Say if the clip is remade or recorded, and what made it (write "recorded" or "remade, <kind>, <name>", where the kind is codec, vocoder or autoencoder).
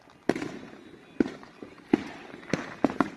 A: recorded